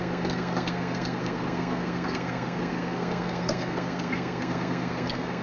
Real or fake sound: fake